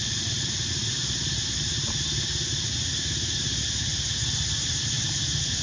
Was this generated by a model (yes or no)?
no